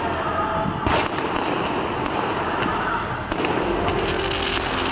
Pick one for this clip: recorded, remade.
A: recorded